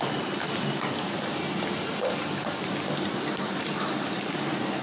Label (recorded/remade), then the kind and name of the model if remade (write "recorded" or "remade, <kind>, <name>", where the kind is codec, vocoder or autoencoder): recorded